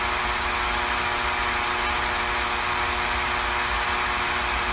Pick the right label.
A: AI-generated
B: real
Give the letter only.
B